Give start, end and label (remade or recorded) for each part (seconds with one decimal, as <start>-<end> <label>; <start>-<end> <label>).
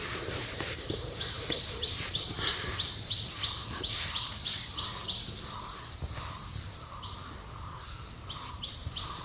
0.0-4.8 remade; 4.8-7.2 recorded; 7.2-7.7 remade; 7.7-9.2 recorded